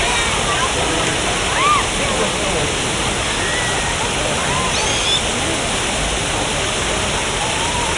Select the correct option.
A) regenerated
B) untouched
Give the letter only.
B